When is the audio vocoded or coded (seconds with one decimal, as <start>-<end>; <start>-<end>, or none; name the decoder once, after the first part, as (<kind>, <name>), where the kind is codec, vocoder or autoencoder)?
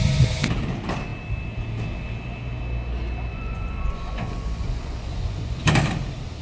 3.3-5.7 (vocoder, Vocos)